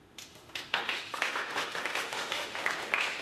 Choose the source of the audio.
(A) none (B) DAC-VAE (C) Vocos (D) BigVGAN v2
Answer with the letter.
B